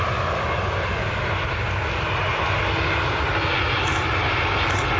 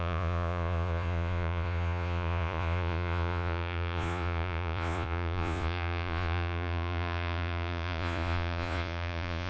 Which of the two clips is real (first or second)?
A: first